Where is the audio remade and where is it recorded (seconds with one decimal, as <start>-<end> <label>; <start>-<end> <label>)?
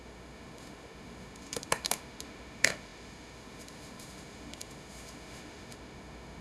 0.0-6.4 remade